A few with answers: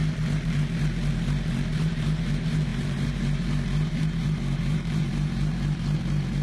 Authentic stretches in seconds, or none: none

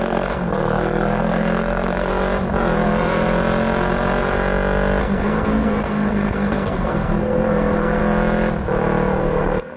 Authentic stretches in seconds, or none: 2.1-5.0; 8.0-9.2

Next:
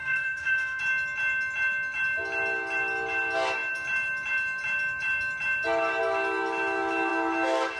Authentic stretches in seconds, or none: 0.8-7.8